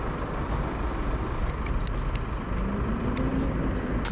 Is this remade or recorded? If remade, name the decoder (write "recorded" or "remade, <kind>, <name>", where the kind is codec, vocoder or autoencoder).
recorded